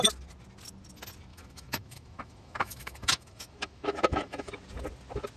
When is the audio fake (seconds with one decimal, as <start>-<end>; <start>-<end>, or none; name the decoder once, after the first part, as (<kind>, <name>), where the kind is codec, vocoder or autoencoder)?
1.3-4.5 (autoencoder, DAC-VAE)